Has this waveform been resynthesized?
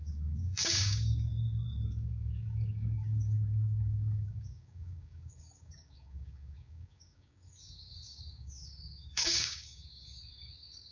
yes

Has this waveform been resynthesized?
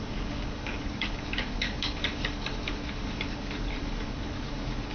yes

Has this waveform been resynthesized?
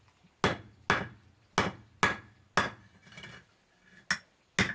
no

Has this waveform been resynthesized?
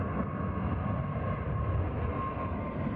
no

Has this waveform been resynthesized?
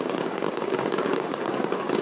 yes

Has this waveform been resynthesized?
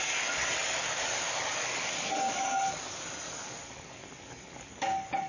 yes